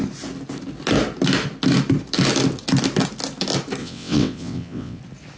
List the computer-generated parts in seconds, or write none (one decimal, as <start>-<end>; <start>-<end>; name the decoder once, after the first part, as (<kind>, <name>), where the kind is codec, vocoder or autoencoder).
3.8-5.0 (vocoder, WaveNeXt)